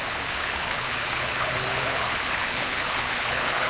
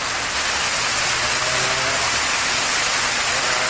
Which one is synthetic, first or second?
first